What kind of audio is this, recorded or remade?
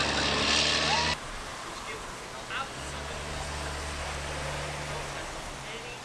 recorded